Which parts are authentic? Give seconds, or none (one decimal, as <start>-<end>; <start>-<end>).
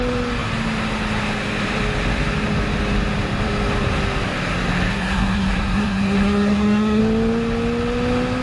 0.0-4.9; 7.0-8.4